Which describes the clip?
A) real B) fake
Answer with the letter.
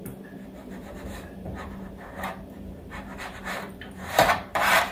B